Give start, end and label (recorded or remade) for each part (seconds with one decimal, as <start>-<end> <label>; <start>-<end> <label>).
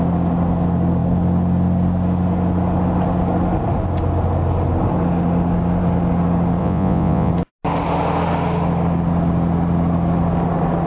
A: 0.0-6.6 recorded; 6.6-7.3 remade; 7.3-10.9 recorded